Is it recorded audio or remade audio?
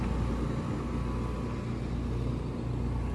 recorded